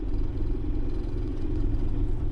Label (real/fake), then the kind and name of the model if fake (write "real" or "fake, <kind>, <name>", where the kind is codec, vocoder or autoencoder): fake, vocoder, WaveNeXt